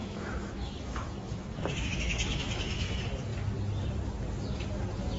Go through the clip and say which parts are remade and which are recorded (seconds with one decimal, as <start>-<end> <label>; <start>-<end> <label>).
0.0-2.9 remade; 2.9-5.2 recorded